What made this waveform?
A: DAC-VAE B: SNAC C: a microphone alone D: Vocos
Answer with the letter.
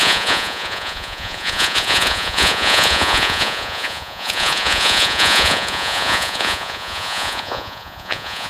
D